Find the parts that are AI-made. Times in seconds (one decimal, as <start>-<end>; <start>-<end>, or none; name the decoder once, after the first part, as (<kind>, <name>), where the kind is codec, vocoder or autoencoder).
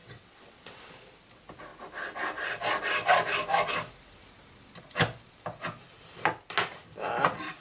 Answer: 0.0-0.9 (vocoder, WaveNeXt)